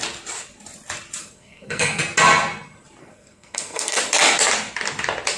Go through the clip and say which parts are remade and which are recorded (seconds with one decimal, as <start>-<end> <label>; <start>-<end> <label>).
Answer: 0.0-1.2 recorded; 1.2-2.0 remade; 2.0-3.0 recorded; 3.0-4.0 remade; 4.0-5.4 recorded